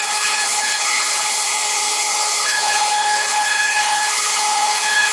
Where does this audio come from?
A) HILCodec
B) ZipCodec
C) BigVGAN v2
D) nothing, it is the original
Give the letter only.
A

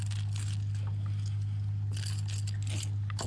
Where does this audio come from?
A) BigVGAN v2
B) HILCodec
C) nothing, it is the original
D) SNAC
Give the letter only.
C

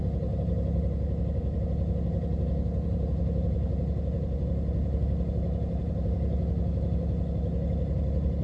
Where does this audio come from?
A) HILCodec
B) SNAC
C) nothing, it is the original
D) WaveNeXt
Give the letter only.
C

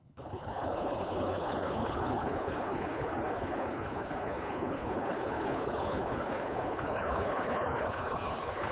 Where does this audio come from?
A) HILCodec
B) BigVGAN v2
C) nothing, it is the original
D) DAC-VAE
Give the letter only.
A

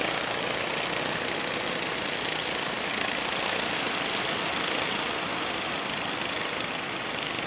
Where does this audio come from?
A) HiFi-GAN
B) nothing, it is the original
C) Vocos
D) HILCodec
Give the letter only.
B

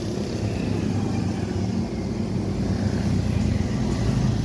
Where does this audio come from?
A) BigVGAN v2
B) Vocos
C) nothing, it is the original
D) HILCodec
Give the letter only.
C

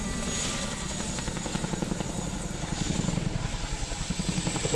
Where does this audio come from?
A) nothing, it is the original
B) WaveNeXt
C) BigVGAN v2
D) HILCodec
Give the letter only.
A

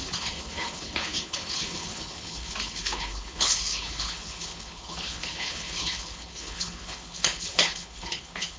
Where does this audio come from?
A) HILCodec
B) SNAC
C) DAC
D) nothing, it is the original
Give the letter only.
A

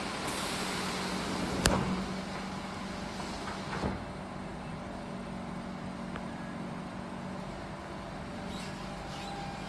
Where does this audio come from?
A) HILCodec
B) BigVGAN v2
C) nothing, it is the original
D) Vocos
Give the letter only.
C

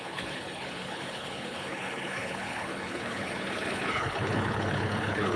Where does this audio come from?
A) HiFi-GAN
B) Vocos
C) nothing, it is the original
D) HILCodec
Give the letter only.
D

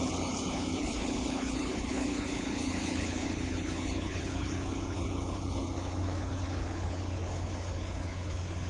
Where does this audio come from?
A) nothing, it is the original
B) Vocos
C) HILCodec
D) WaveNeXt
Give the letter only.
C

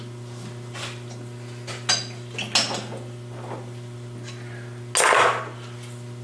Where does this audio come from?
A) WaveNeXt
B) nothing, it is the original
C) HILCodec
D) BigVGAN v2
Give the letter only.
B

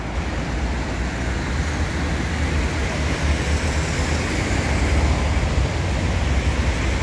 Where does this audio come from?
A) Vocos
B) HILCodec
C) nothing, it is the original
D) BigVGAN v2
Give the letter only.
C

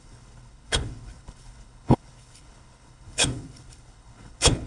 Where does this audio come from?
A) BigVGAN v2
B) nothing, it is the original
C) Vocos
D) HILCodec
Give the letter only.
D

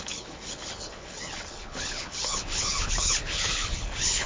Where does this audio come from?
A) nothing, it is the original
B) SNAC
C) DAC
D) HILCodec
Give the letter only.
D